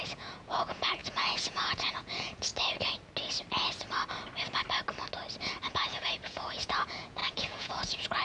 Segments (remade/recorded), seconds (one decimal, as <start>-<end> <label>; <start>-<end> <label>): 0.0-2.5 remade; 2.5-5.7 recorded; 5.7-8.2 remade